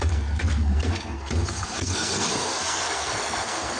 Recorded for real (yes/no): no